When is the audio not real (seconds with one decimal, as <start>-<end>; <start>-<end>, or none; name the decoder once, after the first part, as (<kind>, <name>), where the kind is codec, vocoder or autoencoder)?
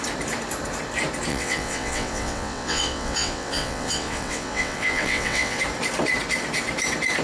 1.3-5.6 (vocoder, WaveNeXt)